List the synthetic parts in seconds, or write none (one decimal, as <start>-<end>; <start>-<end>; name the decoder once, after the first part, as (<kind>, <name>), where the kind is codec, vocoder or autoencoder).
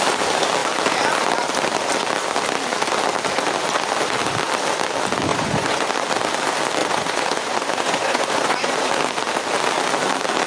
5.3-5.9 (vocoder, Vocos); 6.8-8.9